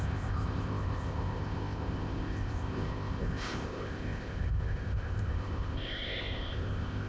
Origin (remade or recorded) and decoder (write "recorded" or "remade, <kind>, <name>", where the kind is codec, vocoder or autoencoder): remade, codec, ZipCodec